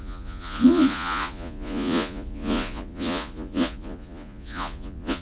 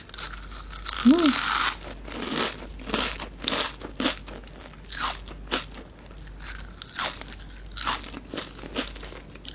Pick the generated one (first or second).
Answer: first